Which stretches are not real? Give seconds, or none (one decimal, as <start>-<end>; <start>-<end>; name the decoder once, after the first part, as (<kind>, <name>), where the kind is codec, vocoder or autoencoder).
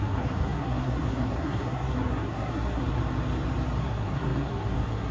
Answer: 0.0-3.0 (codec, SNAC); 3.8-5.1